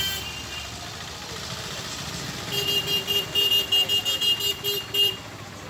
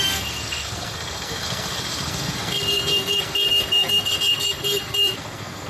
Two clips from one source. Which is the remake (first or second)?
second